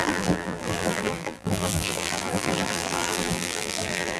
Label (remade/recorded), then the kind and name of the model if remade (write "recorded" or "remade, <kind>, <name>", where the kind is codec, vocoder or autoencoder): remade, vocoder, BigVGAN v2